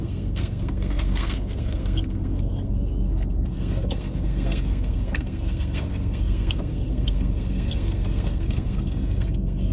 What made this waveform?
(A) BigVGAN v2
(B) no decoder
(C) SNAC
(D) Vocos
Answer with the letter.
C